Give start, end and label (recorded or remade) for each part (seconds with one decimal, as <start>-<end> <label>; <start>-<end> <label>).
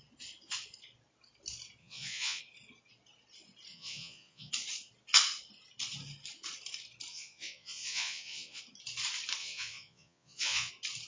0.0-1.8 recorded; 1.8-2.4 remade; 2.4-3.7 recorded; 3.7-4.5 remade; 4.5-7.1 recorded; 7.1-8.6 remade; 8.6-9.4 recorded; 9.4-10.7 remade; 10.7-11.1 recorded